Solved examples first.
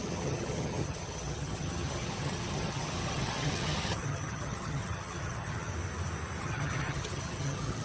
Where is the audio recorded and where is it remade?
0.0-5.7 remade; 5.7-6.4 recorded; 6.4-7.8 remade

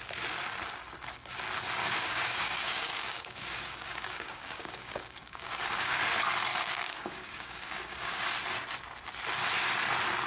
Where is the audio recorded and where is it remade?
0.0-1.8 recorded; 1.8-6.0 remade; 6.0-6.5 recorded; 6.5-8.2 remade; 8.2-10.3 recorded

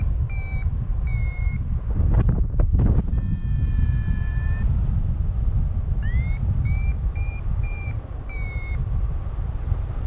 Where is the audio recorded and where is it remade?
0.0-6.9 recorded; 6.9-9.1 remade; 9.1-10.1 recorded

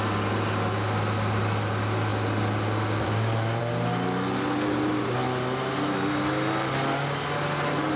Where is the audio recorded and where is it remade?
0.0-8.0 recorded

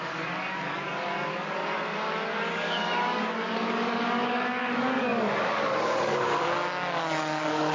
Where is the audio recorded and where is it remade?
0.0-1.6 remade; 1.6-2.5 recorded; 2.5-7.7 remade